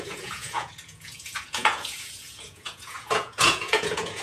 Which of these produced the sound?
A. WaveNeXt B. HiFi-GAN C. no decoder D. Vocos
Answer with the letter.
D